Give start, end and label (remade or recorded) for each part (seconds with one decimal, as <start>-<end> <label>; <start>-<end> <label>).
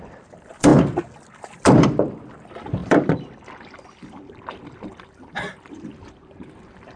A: 0.0-0.7 remade; 0.7-1.4 recorded; 1.4-7.0 remade